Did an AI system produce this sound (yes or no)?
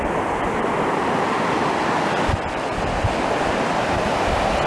no